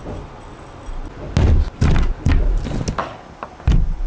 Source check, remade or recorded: recorded